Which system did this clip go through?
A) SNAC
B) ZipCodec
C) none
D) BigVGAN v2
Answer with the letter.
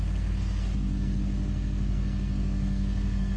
A